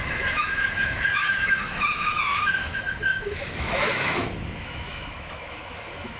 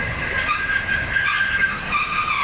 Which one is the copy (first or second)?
first